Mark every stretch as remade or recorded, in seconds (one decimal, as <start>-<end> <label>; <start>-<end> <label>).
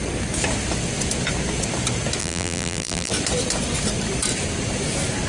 0.0-2.2 recorded; 2.2-3.1 remade; 3.1-5.3 recorded